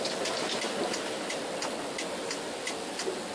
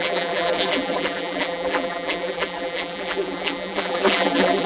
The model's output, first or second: second